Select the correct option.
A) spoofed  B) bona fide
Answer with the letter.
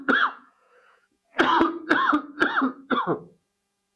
A